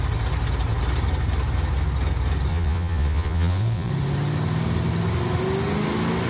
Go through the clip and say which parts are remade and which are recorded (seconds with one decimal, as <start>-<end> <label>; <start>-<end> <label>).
0.0-2.5 recorded; 2.5-3.9 remade; 3.9-6.3 recorded